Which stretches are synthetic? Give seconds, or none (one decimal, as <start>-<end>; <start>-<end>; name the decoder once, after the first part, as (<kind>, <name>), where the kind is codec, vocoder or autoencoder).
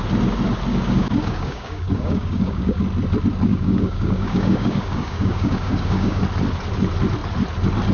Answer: 0.7-2.8 (codec, DAC); 3.5-6.2